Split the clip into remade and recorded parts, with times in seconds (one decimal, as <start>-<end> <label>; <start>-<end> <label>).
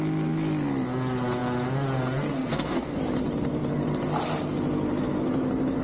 0.0-2.4 recorded; 2.4-3.0 remade; 3.0-5.8 recorded